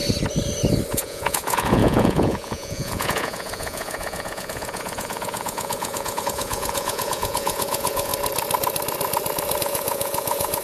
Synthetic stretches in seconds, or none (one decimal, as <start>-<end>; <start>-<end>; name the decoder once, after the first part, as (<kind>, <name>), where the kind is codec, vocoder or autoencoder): 0.9-8.1 (vocoder, Vocos); 9.6-10.6